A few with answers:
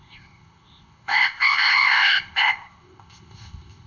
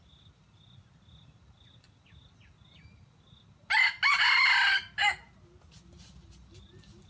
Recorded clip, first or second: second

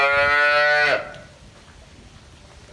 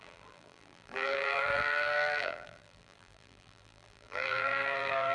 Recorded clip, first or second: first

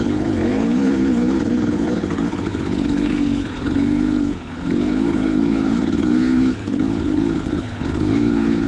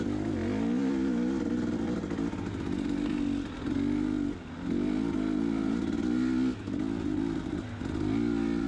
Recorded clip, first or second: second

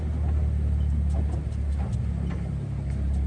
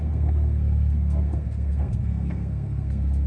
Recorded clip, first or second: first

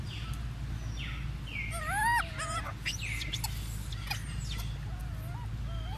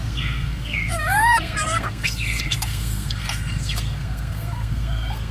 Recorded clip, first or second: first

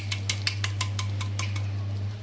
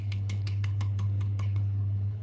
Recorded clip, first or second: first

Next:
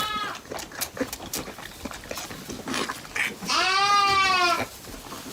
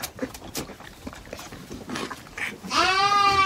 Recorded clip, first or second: first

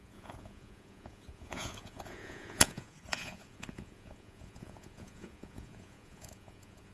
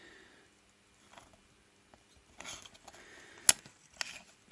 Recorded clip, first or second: second